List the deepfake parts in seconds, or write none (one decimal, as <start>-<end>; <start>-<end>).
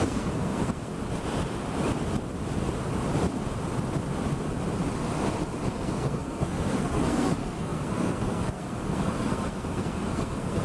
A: 0.0-0.9; 5.7-10.6